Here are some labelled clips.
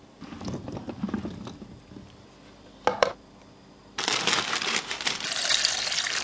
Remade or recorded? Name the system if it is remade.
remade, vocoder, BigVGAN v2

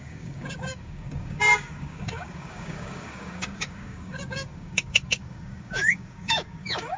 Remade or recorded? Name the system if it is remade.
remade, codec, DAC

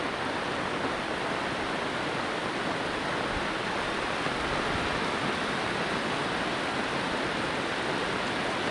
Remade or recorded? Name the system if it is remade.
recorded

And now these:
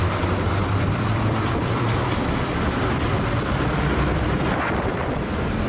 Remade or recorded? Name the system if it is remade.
remade, vocoder, BigVGAN v2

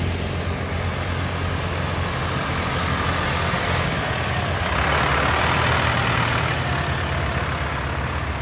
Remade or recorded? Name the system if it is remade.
recorded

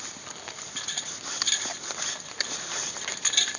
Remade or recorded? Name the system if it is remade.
recorded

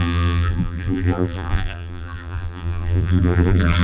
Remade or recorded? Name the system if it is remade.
remade, vocoder, BigVGAN v2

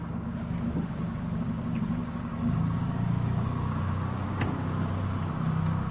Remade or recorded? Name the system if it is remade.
remade, codec, DAC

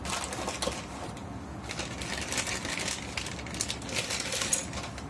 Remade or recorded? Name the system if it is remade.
recorded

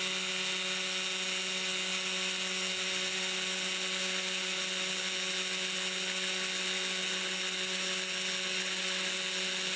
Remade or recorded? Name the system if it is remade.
recorded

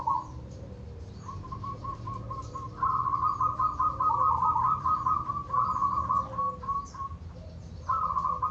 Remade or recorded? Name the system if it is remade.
remade, vocoder, BigVGAN v2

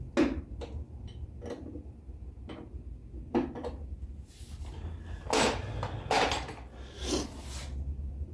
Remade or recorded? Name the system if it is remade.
recorded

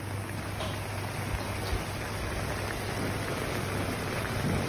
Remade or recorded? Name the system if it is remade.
recorded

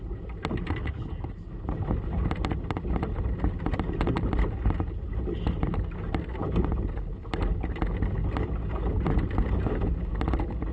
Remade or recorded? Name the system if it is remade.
recorded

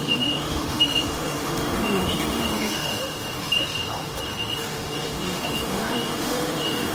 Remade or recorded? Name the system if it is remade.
remade, autoencoder, DAC-VAE